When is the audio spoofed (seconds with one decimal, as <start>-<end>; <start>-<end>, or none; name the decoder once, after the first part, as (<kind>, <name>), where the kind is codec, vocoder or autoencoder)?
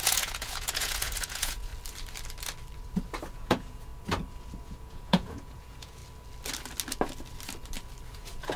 0.0-1.7 (vocoder, Vocos); 3.3-3.9; 4.6-6.0; 8.1-8.6